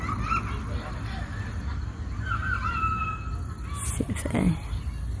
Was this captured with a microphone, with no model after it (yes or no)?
yes